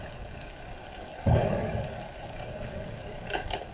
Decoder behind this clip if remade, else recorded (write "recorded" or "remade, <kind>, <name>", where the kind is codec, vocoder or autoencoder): remade, codec, DAC